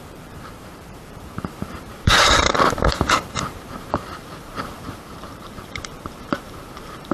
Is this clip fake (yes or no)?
yes